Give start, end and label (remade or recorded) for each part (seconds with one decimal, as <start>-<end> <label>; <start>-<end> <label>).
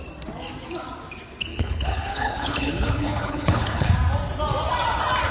0.0-1.5 recorded; 1.5-3.9 remade; 3.9-5.3 recorded